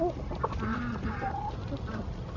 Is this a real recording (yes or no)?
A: yes